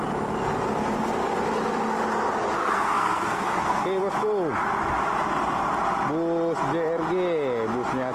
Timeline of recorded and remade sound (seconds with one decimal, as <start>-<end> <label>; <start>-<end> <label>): 0.0-2.6 recorded; 2.6-3.8 remade; 3.8-8.1 recorded

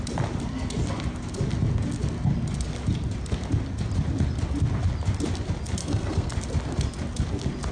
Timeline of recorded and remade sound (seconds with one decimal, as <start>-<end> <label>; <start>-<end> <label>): 0.0-5.8 recorded; 5.8-6.3 remade; 6.3-7.7 recorded

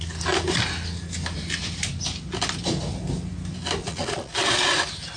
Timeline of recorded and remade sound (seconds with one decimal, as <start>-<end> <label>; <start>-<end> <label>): 0.0-3.8 recorded; 3.8-4.3 remade; 4.3-5.2 recorded

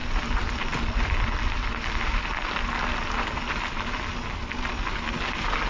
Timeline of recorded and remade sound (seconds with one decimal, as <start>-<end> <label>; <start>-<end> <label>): 0.0-5.7 recorded

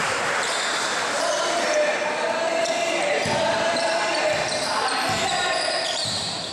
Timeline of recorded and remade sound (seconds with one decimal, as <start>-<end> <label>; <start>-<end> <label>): 0.0-1.9 remade; 1.9-2.7 recorded; 2.7-6.5 remade

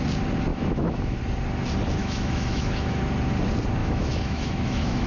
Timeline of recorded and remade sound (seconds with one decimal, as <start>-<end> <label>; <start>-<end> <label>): 0.0-0.5 recorded; 0.5-1.2 remade; 1.2-2.0 recorded; 2.0-3.0 remade; 3.0-3.8 recorded; 3.8-5.1 remade

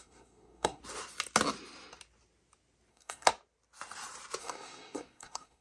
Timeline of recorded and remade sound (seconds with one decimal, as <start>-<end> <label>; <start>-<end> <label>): 0.0-0.8 remade; 0.8-2.9 recorded; 2.9-3.3 remade; 3.3-4.4 recorded; 4.4-5.6 remade